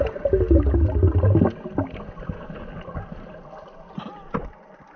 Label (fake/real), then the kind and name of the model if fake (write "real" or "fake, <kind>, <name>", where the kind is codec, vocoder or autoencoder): real